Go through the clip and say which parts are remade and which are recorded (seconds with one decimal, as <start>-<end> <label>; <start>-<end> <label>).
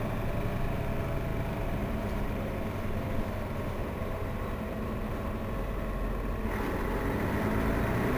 0.0-1.3 recorded; 1.3-2.5 remade; 2.5-3.8 recorded; 3.8-5.4 remade; 5.4-8.2 recorded